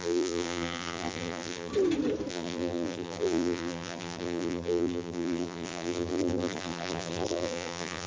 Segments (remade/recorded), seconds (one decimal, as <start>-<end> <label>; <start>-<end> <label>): 0.0-1.7 remade; 1.7-2.3 recorded; 2.3-8.1 remade